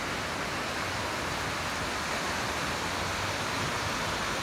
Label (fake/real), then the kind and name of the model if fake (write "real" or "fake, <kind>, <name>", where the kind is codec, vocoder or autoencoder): real